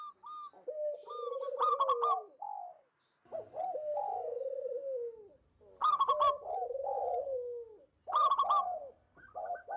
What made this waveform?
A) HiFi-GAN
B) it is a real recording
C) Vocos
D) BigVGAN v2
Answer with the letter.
B